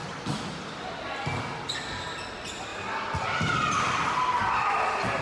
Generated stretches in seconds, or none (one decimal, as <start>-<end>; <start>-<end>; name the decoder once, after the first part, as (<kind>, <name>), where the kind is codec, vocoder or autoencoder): none